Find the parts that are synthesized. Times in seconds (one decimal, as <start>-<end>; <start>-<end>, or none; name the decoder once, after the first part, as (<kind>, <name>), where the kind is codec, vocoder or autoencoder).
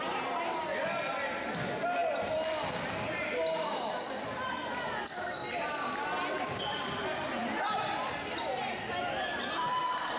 none